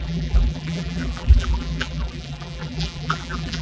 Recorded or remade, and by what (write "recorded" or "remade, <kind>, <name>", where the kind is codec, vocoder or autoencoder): remade, vocoder, BigVGAN v2